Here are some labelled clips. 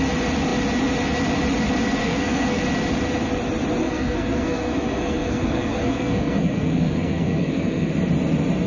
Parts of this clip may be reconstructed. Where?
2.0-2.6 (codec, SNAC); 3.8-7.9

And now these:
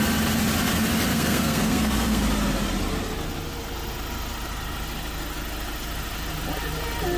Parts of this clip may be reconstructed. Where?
1.1-2.2 (codec, SNAC)

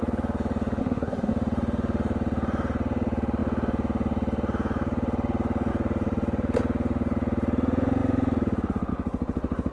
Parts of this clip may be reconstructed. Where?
0.8-1.3 (codec, SNAC)

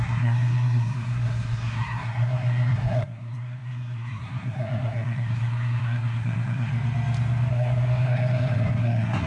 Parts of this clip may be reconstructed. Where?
0.0-6.7 (codec, SNAC); 7.5-9.3

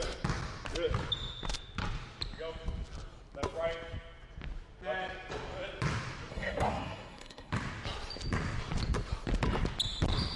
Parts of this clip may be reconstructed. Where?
6.3-7.5 (codec, SNAC)

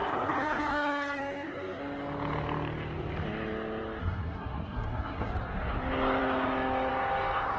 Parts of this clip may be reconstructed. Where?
0.0-1.8 (codec, SNAC); 4.0-5.3

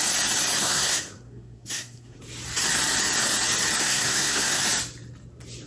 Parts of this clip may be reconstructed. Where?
0.6-2.2 (codec, SNAC); 3.8-4.6